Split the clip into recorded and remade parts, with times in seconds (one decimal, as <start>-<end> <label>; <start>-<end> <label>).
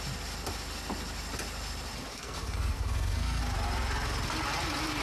0.0-2.1 recorded; 2.1-3.4 remade; 3.4-5.0 recorded